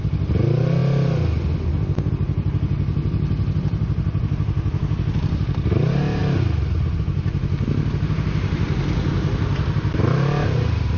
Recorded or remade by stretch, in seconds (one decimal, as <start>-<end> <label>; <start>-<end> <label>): 0.0-11.0 recorded